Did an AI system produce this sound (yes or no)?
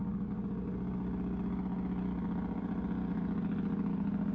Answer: no